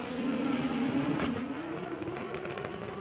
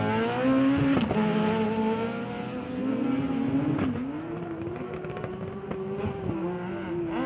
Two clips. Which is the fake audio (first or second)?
first